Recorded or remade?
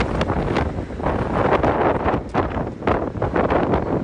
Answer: recorded